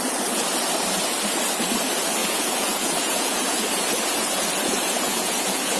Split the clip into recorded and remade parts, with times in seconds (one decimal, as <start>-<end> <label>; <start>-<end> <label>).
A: 0.0-2.2 recorded; 2.2-5.8 remade